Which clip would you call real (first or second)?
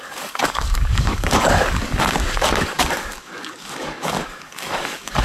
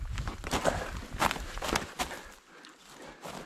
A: second